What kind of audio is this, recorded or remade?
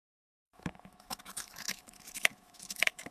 remade